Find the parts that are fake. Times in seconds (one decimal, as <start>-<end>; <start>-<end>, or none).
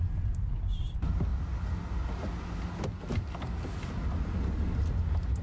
none